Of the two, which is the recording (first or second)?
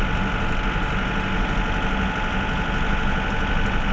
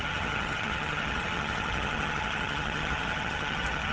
first